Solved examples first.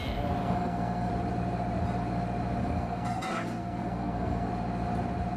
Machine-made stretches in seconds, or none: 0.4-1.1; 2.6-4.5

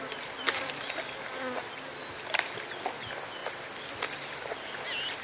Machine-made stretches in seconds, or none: none

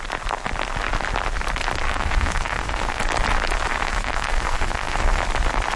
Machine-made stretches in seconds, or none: 1.9-3.0; 3.7-5.2

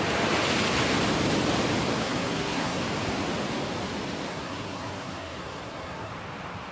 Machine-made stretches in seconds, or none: 2.0-2.8; 4.3-6.1

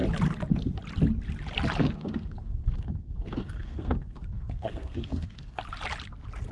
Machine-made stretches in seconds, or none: 1.8-5.6

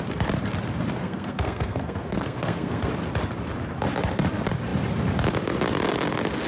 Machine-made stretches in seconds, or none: 1.0-2.9

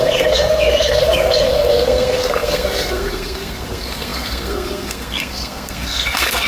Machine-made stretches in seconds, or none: 0.0-6.5

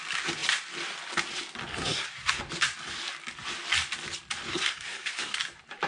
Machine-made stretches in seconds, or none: 1.7-2.4; 4.5-5.4